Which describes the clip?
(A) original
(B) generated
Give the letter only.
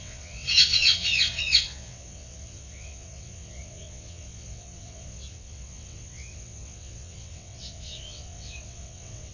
B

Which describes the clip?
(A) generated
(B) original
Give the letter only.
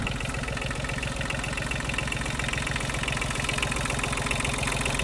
B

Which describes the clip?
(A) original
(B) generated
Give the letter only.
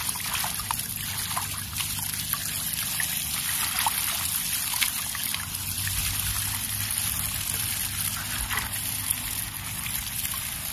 A